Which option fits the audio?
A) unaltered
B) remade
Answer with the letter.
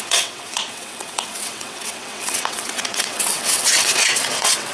B